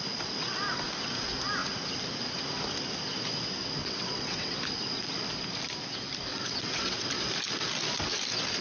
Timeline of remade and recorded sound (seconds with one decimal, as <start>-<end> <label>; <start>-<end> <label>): 0.0-3.8 recorded; 3.8-4.6 remade; 4.6-6.3 recorded; 6.3-7.1 remade; 7.1-8.6 recorded